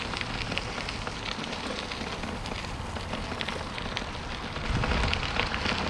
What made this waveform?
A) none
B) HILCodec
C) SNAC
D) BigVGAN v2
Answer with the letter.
A